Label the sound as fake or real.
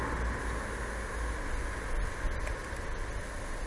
real